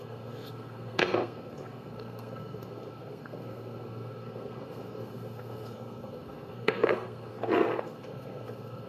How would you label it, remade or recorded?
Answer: remade